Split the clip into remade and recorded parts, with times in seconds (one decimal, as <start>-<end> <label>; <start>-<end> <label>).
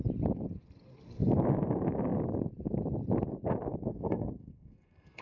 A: 0.0-3.7 recorded; 3.7-5.2 remade